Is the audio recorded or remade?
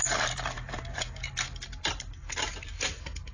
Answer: remade